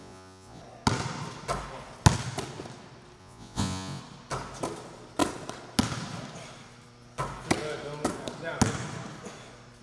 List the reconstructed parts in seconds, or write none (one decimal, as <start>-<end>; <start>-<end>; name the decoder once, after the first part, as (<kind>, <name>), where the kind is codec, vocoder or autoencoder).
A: 0.0-0.6 (vocoder, Vocos); 3.2-4.0